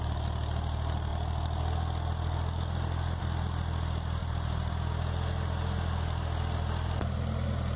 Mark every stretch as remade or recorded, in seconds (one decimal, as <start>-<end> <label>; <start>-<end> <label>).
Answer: 0.0-4.2 recorded; 4.2-4.7 remade; 4.7-7.8 recorded